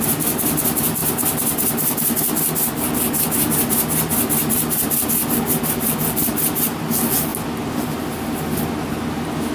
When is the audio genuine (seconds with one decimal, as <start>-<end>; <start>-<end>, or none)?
0.0-9.5